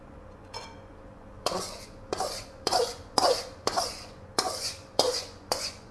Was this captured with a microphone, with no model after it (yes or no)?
no